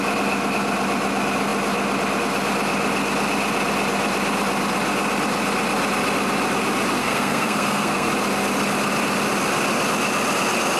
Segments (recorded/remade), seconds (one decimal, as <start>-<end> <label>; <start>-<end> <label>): 0.0-7.0 recorded; 7.0-8.1 remade; 8.1-10.8 recorded